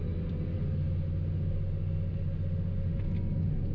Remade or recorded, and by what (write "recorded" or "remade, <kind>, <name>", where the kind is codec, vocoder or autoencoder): recorded